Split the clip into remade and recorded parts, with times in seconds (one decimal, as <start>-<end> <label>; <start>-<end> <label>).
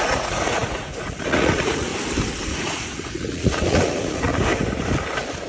0.0-1.9 remade; 1.9-2.5 recorded; 2.5-4.3 remade; 4.3-5.5 recorded